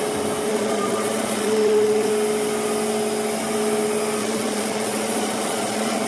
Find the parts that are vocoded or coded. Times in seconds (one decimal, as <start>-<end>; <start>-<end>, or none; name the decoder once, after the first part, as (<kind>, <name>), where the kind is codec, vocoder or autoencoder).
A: 0.5-2.1 (vocoder, Vocos); 4.2-6.1